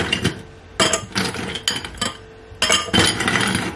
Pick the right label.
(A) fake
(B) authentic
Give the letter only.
B